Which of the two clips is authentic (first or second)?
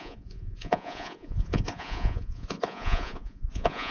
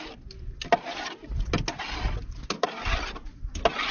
second